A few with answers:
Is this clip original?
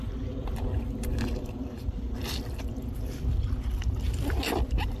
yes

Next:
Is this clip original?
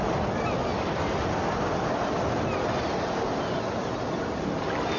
yes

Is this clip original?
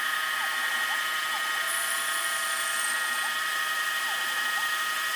no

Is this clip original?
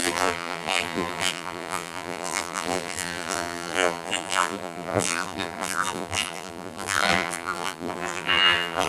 no